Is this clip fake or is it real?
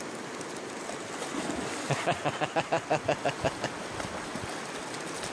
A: real